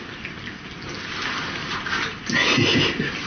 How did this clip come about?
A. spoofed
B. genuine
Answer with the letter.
B